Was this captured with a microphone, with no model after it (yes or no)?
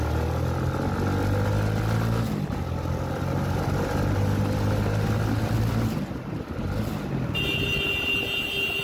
yes